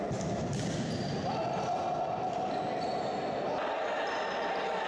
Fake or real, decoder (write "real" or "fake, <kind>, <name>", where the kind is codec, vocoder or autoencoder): real